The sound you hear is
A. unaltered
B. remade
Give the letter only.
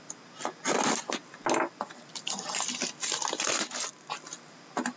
A